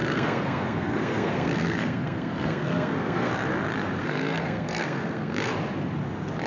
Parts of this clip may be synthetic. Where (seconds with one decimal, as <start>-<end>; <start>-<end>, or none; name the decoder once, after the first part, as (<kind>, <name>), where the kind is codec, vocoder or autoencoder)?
0.0-3.3 (codec, SNAC); 4.0-5.5